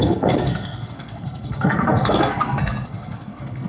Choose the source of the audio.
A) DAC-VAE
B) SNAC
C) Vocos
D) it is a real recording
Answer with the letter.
B